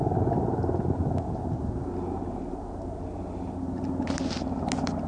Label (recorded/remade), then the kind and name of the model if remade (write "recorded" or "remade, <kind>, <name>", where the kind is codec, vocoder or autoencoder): recorded